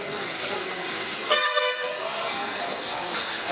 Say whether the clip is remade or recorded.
remade